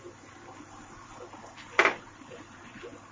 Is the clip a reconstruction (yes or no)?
no